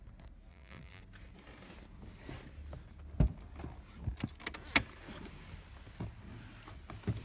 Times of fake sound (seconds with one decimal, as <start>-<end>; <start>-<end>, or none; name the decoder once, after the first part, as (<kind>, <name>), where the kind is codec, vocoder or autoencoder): 0.5-1.0 (vocoder, BigVGAN v2)